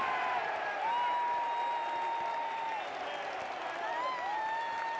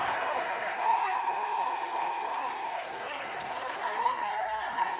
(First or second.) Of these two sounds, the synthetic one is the second